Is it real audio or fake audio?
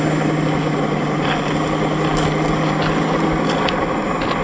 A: real